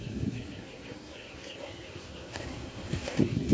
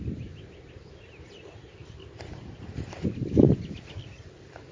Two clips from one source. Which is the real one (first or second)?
second